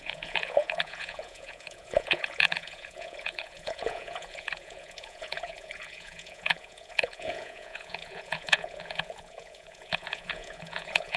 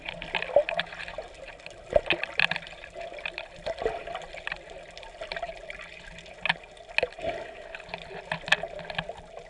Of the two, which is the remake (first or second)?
first